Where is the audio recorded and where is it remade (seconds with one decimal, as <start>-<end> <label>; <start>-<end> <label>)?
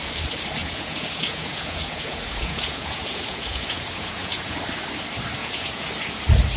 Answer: 0.0-0.6 recorded; 0.6-4.6 remade; 4.6-5.4 recorded; 5.4-5.9 remade; 5.9-6.6 recorded